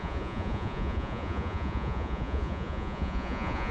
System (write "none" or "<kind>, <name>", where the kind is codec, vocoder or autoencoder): vocoder, Vocos